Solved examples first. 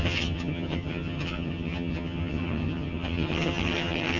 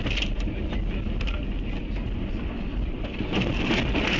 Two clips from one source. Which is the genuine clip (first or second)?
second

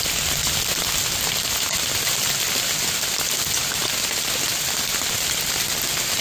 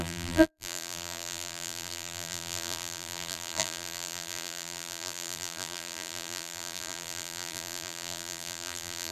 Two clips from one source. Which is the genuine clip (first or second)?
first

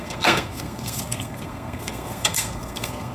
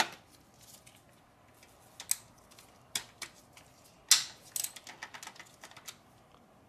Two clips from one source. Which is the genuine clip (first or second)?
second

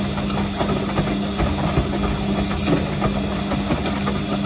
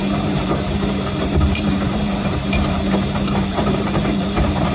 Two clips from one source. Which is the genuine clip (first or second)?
first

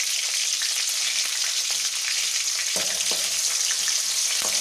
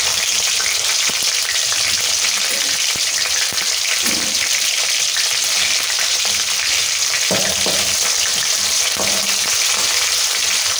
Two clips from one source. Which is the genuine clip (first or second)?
first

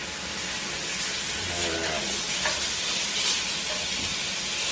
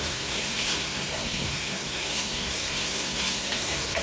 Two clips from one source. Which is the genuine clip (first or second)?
first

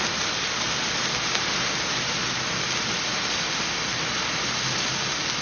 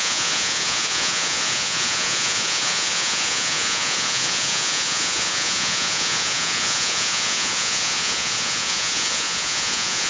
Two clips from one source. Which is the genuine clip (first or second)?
first